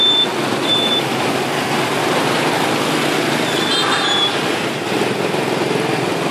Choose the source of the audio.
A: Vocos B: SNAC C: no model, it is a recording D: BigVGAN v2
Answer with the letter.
C